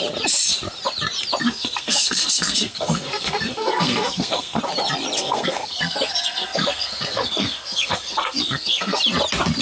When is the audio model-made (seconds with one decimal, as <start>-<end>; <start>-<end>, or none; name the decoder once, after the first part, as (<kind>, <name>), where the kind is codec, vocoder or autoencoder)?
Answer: 1.4-4.6 (codec, SNAC); 5.2-9.0